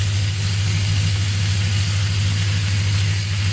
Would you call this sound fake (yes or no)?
no